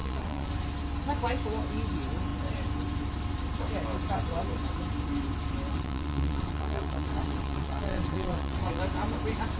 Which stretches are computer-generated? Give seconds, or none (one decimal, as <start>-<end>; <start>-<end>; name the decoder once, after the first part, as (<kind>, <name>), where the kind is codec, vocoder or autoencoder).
0.0-0.5 (vocoder, WaveNeXt); 5.7-8.8